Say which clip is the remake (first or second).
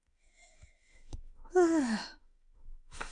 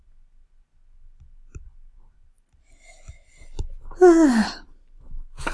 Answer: first